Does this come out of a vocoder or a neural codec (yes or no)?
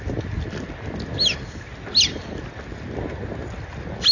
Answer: no